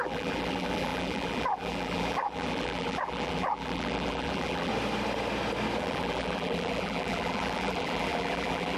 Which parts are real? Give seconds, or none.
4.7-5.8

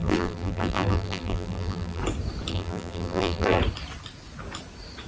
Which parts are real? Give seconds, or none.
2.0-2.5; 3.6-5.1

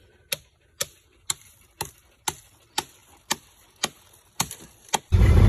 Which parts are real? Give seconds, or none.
0.0-3.0; 5.0-5.5

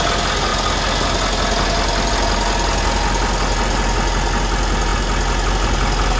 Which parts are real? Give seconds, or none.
0.0-6.2

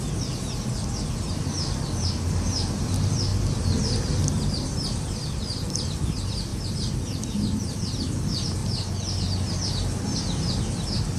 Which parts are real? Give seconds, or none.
0.0-6.5; 7.8-8.6; 10.2-11.2